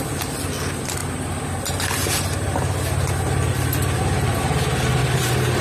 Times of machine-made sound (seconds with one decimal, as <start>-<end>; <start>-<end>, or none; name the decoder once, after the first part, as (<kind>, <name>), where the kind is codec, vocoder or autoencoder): 5.0-5.6 (vocoder, BigVGAN v2)

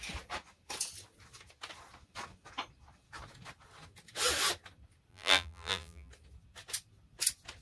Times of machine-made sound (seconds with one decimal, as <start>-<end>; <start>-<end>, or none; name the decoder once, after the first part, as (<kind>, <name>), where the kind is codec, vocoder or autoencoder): 5.1-6.1 (vocoder, BigVGAN v2)

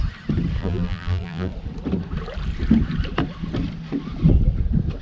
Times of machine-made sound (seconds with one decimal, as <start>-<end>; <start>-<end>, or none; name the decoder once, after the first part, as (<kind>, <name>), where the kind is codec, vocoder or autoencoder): 0.6-1.5 (vocoder, BigVGAN v2)

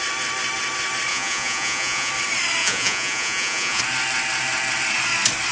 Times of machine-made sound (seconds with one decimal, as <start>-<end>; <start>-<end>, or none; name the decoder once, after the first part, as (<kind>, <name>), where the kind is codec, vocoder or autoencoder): 1.1-2.1 (vocoder, Vocos); 2.6-3.8

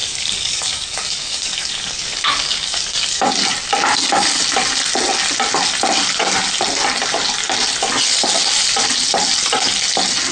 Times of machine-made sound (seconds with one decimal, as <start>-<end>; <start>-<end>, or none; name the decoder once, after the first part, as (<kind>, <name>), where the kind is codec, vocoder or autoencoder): 0.0-3.3 (codec, DAC)

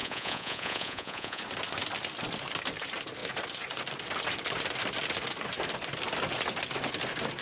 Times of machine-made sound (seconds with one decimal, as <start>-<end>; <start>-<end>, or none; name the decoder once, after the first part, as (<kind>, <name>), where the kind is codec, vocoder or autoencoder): 0.0-1.4 (vocoder, Vocos)